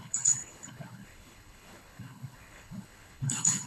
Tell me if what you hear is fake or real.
fake